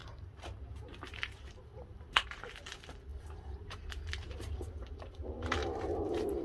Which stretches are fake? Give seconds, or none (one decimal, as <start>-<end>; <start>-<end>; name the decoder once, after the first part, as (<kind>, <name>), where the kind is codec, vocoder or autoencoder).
0.0-6.4 (vocoder, BigVGAN v2)